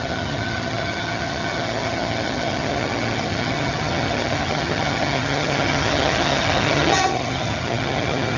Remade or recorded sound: remade